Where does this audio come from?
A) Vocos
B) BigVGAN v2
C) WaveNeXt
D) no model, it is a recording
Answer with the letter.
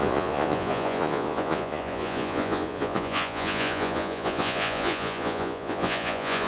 A